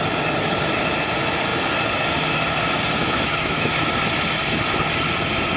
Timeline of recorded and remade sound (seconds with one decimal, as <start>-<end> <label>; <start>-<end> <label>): 0.0-3.0 recorded; 3.0-3.7 remade; 3.7-5.6 recorded